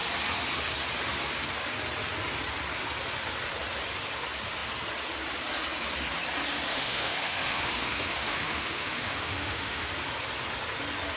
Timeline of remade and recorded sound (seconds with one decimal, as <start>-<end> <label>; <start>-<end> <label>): 0.0-6.7 recorded; 6.7-9.9 remade; 9.9-11.2 recorded